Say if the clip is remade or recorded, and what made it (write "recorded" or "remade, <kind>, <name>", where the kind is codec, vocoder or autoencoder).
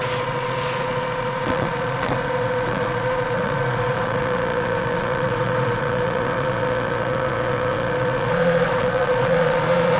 remade, vocoder, Vocos